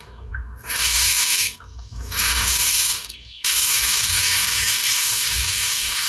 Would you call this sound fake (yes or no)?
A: yes